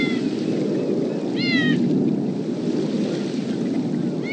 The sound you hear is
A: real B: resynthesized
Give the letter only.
A